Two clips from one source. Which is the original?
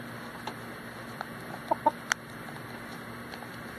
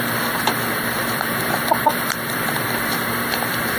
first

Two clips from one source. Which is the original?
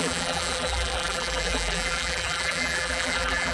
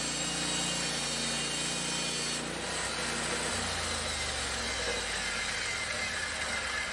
second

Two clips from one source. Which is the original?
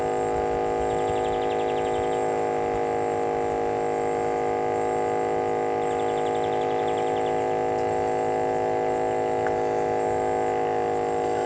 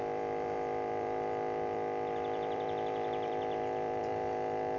first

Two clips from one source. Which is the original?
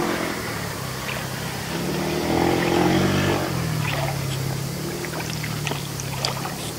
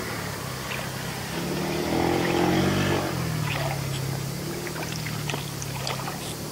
second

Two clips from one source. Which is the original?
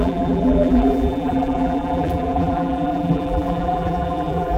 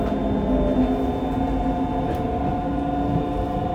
second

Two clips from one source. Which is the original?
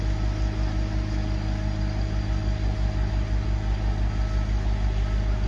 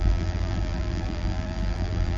first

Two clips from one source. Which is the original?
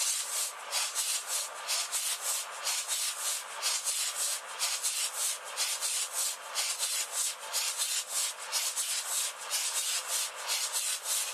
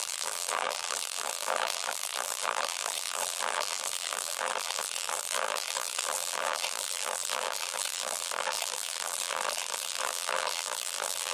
first